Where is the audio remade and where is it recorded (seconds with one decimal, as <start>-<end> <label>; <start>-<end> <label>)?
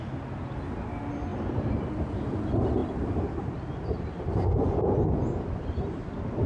0.0-2.8 recorded; 2.8-6.5 remade